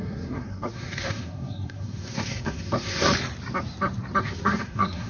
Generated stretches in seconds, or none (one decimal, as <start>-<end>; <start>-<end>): 0.0-3.1; 4.2-5.1